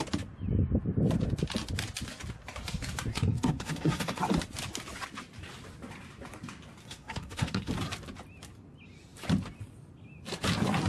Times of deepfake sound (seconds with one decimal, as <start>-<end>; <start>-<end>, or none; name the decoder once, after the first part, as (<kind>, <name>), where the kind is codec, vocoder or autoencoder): 3.1-4.2 (codec, SNAC); 6.8-7.7

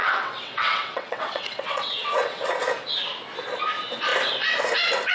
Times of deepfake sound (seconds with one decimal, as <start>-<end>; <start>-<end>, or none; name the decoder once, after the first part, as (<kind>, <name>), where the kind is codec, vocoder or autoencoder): 0.0-2.5 (vocoder, WaveNeXt)